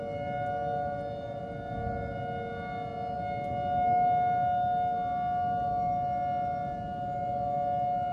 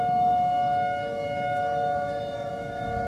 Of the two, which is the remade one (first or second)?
second